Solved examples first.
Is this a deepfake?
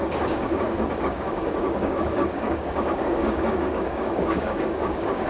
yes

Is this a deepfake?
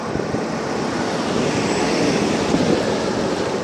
no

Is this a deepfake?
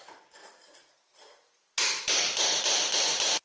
no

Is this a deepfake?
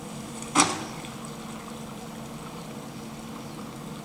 no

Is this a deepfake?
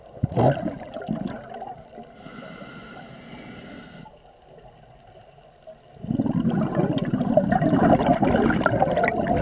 no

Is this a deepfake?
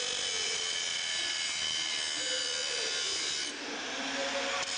no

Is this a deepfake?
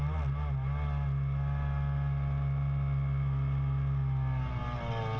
no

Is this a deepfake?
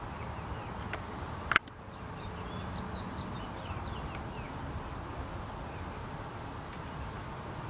no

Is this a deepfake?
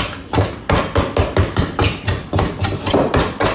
no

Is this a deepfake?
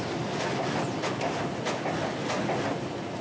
no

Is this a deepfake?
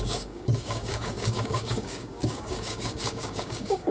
yes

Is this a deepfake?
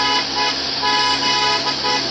no